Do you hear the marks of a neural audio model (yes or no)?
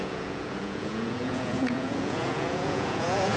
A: yes